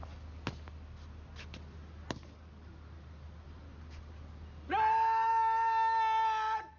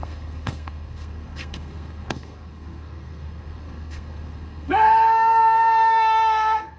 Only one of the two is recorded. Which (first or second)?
first